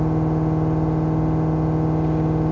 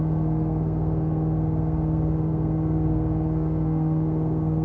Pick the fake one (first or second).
second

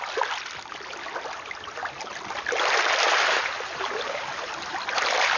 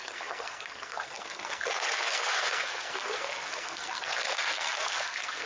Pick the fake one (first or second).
second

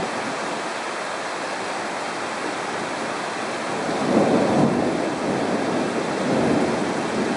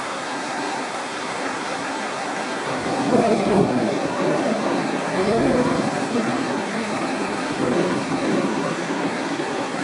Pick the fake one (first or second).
second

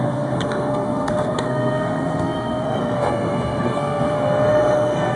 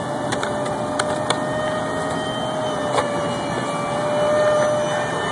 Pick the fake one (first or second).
first